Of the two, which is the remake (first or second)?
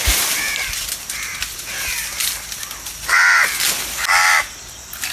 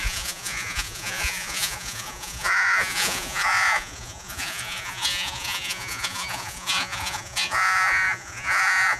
second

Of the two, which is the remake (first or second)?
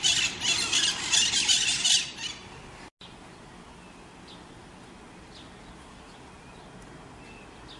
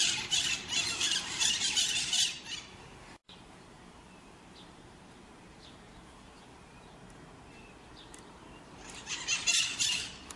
second